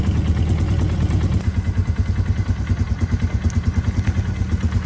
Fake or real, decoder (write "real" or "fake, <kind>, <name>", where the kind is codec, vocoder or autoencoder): real